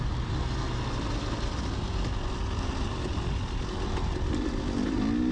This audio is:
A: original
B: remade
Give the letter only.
A